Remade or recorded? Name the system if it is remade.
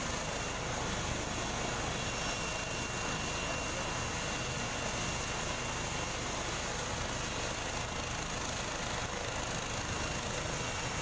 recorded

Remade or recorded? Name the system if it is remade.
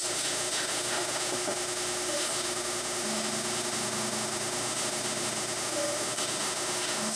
remade, autoencoder, DAC-VAE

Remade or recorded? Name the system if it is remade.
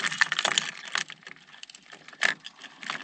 recorded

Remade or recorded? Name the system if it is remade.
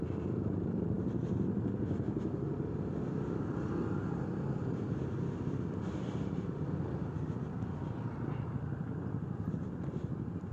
recorded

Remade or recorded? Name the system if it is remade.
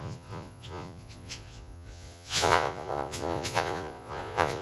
remade, vocoder, Vocos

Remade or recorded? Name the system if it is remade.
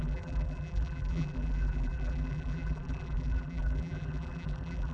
remade, vocoder, BigVGAN v2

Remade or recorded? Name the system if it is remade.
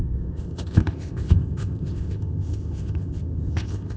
remade, codec, ZipCodec